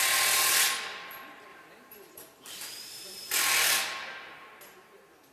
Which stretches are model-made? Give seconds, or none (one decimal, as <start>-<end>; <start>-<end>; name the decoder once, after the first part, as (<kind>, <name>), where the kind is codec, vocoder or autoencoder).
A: 1.5-3.4 (vocoder, BigVGAN v2)

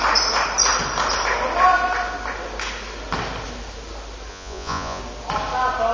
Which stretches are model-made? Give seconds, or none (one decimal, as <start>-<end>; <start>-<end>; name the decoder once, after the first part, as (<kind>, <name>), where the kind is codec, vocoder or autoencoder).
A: 4.3-5.0 (vocoder, Vocos)

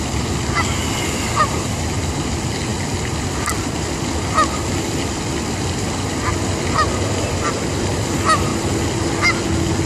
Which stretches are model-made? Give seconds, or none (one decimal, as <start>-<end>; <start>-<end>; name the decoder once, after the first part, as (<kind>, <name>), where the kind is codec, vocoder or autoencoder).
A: none

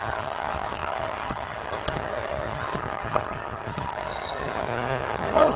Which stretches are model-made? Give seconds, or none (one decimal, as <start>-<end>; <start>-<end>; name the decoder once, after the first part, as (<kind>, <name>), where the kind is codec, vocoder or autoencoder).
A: 0.0-5.6 (vocoder, HiFi-GAN)

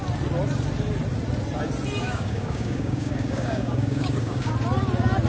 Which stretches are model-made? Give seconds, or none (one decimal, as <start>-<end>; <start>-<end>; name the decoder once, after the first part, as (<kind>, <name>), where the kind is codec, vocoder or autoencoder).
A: 2.0-4.5 (codec, DAC)

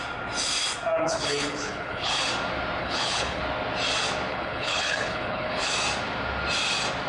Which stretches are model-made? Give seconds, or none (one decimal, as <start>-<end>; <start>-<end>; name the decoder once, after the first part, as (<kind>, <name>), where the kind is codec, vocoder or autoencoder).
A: 1.0-2.3 (codec, HILCodec); 2.8-3.4; 4.3-5.7

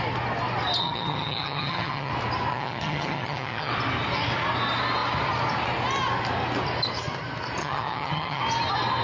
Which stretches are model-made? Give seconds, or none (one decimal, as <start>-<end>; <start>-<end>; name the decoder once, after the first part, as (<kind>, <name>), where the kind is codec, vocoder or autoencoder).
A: 0.8-2.1 (vocoder, HiFi-GAN); 2.5-3.7; 7.6-8.4

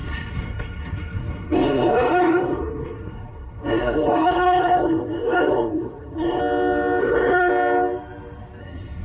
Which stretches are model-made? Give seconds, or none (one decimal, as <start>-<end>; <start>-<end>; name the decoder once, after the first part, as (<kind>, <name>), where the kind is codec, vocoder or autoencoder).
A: 0.0-6.4 (codec, SNAC); 7.0-7.5; 8.6-9.0